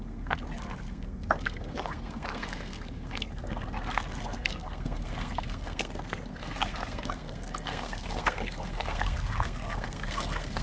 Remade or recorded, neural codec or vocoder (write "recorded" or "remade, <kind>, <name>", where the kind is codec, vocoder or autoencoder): remade, codec, SNAC